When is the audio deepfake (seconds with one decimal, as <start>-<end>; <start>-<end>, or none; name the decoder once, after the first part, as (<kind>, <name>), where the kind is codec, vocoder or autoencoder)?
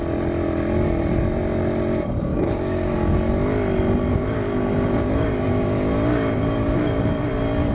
2.3-3.2 (codec, DAC); 4.1-7.3